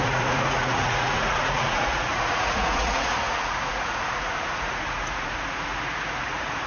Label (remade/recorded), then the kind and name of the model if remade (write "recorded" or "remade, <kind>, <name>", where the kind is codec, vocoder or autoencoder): remade, vocoder, Vocos